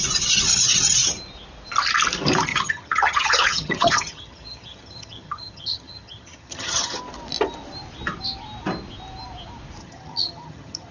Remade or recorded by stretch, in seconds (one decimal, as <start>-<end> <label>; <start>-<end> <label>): 0.0-2.5 recorded; 2.5-7.0 remade; 7.0-9.8 recorded; 9.8-10.9 remade